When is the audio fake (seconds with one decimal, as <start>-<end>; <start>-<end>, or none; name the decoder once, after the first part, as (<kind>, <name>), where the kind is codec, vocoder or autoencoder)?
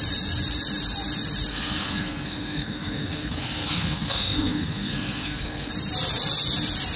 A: 1.5-5.7 (codec, SNAC)